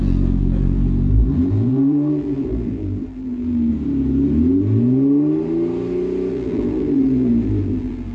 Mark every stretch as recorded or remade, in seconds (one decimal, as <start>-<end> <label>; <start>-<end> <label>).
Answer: 0.0-3.7 remade; 3.7-6.3 recorded; 6.3-8.1 remade